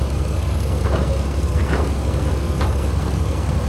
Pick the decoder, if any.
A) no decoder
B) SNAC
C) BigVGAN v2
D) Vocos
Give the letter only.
B